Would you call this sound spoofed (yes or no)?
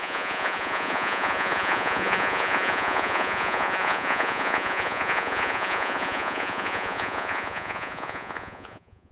yes